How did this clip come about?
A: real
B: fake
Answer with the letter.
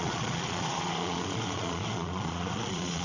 B